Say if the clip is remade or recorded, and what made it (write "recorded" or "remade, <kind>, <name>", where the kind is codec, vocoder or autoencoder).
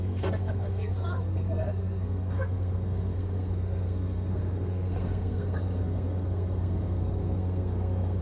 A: remade, codec, SNAC